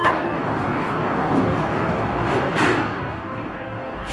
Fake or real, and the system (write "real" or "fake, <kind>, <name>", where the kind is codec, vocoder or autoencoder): fake, codec, DAC